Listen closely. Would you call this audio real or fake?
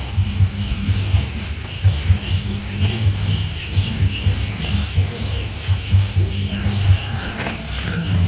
fake